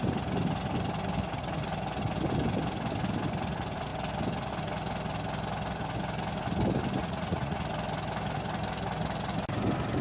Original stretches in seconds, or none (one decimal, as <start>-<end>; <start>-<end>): 0.0-7.0; 7.7-10.0